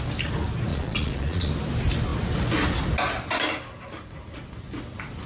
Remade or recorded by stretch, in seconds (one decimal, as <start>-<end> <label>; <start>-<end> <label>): 0.0-0.7 recorded; 0.7-1.5 remade; 1.5-5.3 recorded